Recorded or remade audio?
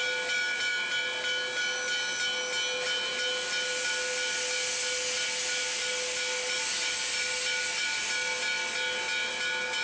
recorded